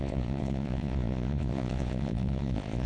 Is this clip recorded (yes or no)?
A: no